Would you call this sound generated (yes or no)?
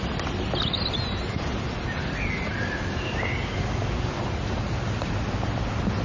no